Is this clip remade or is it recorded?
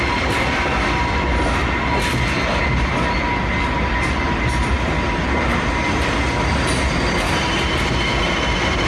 recorded